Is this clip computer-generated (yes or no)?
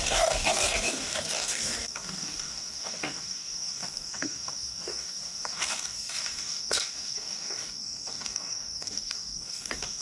yes